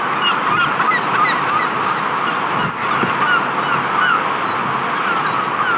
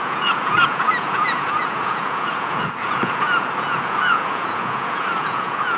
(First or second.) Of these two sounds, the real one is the first